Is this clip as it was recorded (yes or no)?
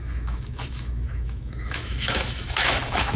no